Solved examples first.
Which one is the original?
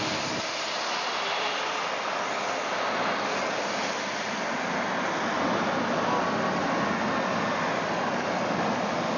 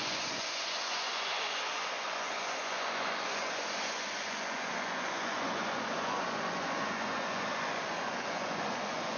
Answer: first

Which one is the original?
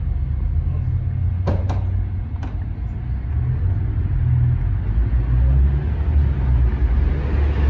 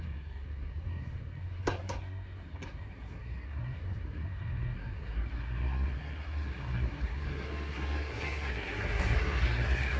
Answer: first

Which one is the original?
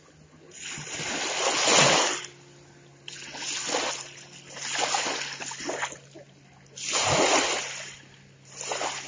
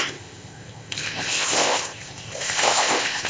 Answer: first